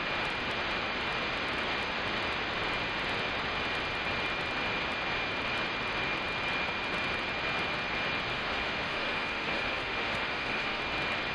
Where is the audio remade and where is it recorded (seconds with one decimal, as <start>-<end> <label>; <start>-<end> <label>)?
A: 0.0-8.3 recorded; 8.3-10.8 remade; 10.8-11.3 recorded